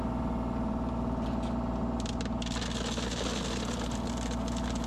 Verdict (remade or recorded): recorded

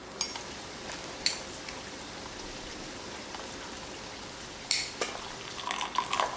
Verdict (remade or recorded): recorded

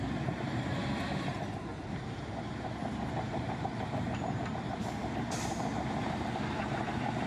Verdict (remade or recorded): remade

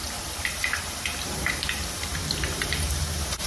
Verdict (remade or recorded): remade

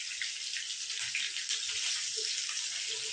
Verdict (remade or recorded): recorded